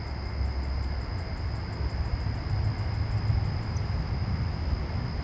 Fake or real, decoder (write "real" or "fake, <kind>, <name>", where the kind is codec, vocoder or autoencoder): real